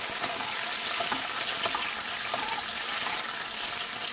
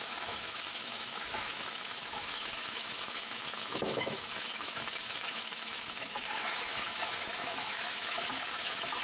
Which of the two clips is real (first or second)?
first